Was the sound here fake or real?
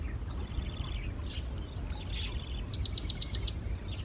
real